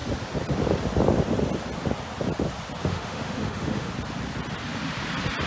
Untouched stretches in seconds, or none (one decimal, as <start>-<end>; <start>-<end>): 0.0-2.8; 3.9-5.5